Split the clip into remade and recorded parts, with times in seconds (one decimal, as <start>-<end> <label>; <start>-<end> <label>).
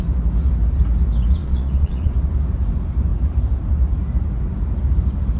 0.0-1.4 recorded; 1.4-2.1 remade; 2.1-5.4 recorded